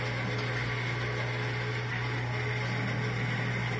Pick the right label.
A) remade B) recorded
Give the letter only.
B